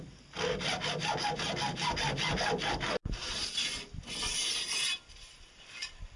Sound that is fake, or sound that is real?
real